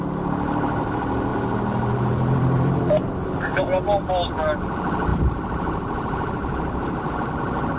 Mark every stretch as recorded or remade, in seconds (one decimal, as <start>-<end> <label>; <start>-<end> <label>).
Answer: 0.0-1.3 recorded; 1.3-3.6 remade; 3.6-5.1 recorded; 5.1-7.3 remade; 7.3-7.8 recorded